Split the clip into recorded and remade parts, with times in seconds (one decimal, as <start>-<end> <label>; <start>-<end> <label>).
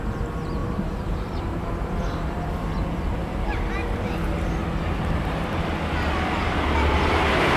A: 0.0-0.6 recorded; 0.6-2.5 remade; 2.5-4.6 recorded; 4.6-5.6 remade; 5.6-7.6 recorded